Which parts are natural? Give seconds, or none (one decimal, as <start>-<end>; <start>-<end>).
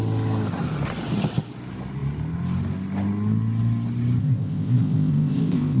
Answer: 0.0-4.2